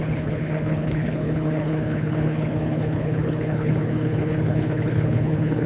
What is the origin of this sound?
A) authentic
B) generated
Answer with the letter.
B